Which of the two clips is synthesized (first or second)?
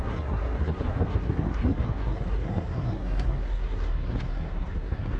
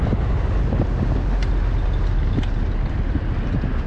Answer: first